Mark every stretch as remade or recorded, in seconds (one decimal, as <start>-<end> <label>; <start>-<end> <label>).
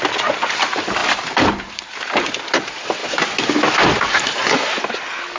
0.0-1.0 remade; 1.0-1.7 recorded; 1.7-3.0 remade; 3.0-4.2 recorded; 4.2-5.4 remade